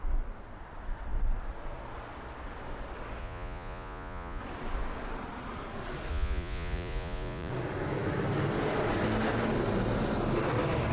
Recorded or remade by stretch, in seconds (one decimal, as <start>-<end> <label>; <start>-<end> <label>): 0.0-3.2 recorded; 3.2-4.4 remade; 4.4-6.1 recorded; 6.1-7.5 remade; 7.5-10.9 recorded